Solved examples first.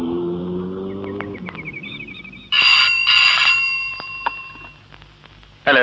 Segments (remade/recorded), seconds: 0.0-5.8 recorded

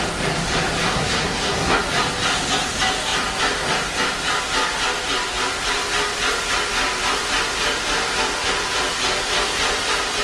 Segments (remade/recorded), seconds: 0.0-0.9 recorded; 0.9-1.8 remade; 1.8-10.2 recorded

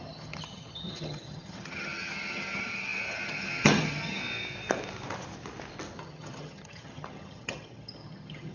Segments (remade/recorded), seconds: 0.0-4.2 remade; 4.2-6.0 recorded; 6.0-8.5 remade

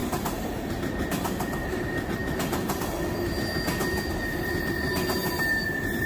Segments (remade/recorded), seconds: 0.0-1.3 remade; 1.3-6.1 recorded